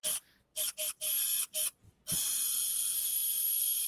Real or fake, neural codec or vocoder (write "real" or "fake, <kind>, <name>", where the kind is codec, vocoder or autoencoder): real